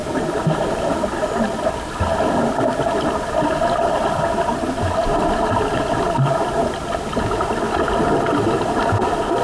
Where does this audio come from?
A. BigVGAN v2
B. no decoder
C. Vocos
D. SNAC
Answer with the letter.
B